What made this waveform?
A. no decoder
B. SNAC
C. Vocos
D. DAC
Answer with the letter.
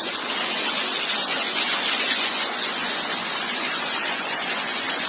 C